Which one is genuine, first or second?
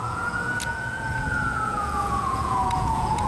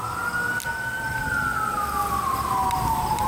second